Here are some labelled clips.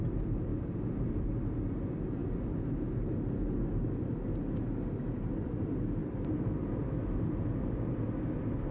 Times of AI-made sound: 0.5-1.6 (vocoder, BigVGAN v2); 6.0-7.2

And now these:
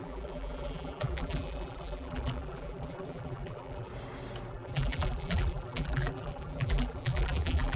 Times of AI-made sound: 0.0-3.9 (vocoder, BigVGAN v2); 4.5-7.8